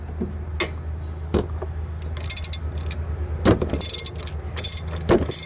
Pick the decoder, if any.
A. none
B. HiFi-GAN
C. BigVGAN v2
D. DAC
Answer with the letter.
A